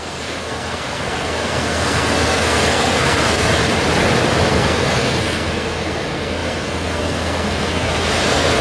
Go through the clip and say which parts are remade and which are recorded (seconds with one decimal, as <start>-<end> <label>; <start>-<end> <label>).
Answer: 0.0-3.6 remade; 3.6-4.5 recorded; 4.5-8.6 remade